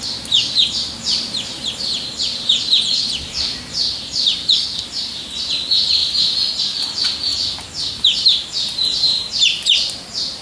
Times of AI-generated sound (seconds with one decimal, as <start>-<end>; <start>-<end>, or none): 7.3-9.3